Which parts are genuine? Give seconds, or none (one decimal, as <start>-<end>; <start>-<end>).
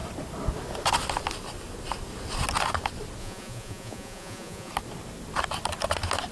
0.0-3.2; 4.7-6.3